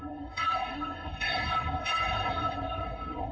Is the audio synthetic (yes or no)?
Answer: yes